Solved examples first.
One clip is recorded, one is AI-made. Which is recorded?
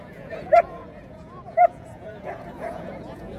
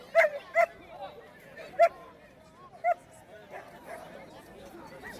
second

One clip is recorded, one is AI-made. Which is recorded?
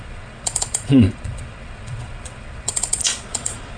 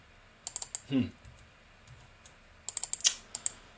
second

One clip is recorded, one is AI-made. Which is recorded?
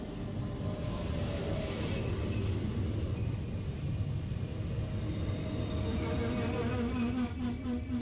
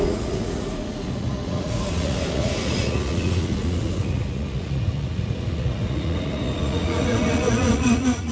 first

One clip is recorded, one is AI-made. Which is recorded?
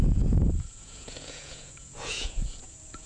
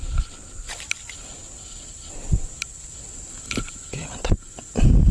second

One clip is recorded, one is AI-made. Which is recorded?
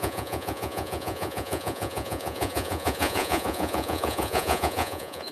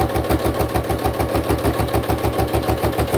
second